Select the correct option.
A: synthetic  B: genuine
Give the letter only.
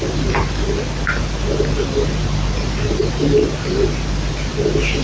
B